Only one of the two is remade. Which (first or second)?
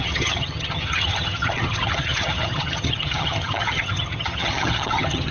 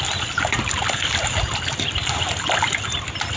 first